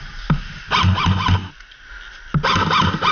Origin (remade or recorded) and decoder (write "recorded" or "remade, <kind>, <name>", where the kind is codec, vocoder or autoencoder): recorded